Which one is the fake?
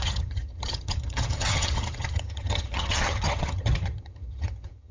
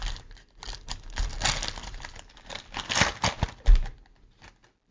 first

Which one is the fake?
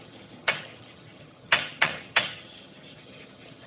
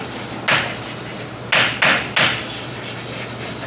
first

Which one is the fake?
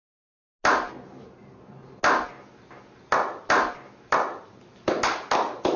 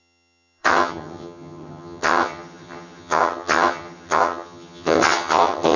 second